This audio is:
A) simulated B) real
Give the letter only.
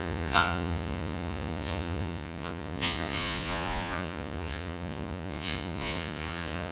A